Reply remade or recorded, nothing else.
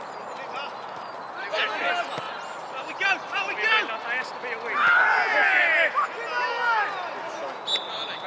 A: recorded